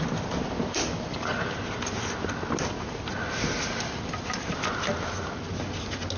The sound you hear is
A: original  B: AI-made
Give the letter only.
A